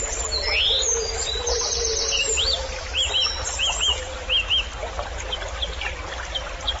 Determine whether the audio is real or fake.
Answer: real